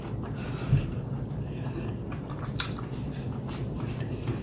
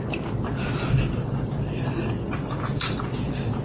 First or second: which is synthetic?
first